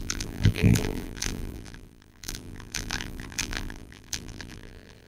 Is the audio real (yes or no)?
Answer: no